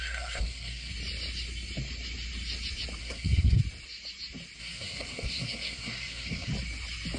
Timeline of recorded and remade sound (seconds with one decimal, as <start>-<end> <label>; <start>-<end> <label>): 0.0-0.9 remade; 0.9-3.0 recorded; 3.0-3.6 remade; 3.6-4.6 recorded; 4.6-6.5 remade; 6.5-7.2 recorded